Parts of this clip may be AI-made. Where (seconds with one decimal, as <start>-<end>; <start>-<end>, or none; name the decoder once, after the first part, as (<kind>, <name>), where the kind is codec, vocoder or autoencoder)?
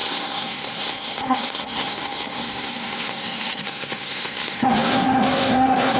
0.0-6.0 (codec, SNAC)